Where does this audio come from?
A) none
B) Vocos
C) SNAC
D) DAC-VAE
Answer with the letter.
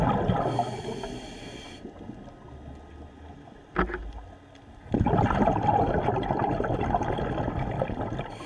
A